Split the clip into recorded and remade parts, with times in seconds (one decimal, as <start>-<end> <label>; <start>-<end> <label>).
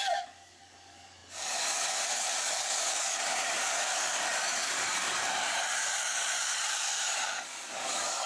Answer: 0.0-8.3 remade